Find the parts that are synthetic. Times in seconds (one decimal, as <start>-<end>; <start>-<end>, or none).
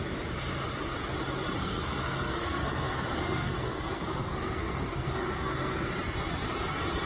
1.6-5.9